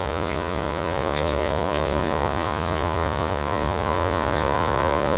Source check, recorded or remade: remade